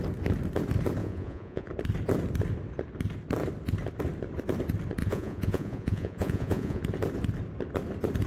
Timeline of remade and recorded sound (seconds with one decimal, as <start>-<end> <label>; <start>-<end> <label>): 0.0-1.0 recorded; 1.0-1.7 remade; 1.7-5.0 recorded; 5.0-6.8 remade; 6.8-8.3 recorded